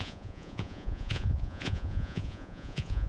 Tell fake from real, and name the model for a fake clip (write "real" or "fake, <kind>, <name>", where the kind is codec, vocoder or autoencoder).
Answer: fake, vocoder, Vocos